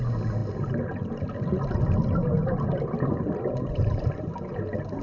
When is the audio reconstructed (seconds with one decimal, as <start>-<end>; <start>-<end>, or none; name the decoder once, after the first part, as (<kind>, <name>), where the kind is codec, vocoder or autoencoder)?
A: none

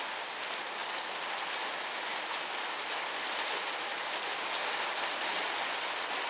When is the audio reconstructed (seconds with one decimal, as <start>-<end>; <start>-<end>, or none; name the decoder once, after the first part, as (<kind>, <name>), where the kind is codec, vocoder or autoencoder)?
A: none

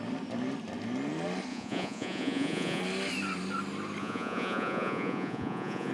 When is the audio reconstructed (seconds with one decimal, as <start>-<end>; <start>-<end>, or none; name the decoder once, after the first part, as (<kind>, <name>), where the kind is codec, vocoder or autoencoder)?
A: 1.5-2.8 (vocoder, Vocos); 4.0-5.9